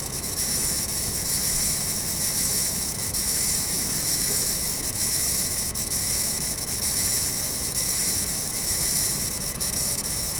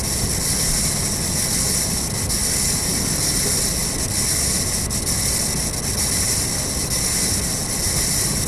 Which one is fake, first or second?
first